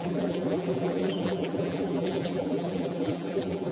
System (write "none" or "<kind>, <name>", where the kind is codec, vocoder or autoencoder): vocoder, BigVGAN v2